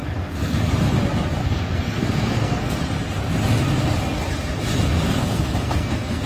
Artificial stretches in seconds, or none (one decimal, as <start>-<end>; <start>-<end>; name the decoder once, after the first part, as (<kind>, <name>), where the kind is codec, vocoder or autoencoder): 0.0-0.7 (codec, SNAC); 1.4-2.8; 4.9-6.3